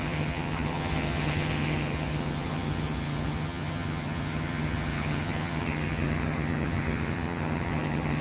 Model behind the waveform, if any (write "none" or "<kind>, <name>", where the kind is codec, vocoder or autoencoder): vocoder, HiFi-GAN